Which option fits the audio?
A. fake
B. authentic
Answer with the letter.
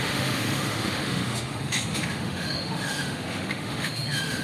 A